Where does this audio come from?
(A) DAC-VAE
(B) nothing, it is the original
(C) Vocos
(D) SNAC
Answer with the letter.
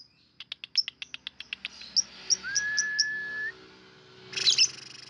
B